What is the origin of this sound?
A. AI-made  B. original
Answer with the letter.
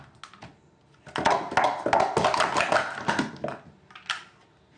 B